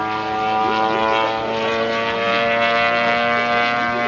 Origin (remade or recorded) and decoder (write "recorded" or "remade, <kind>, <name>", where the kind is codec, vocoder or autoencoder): remade, vocoder, BigVGAN v2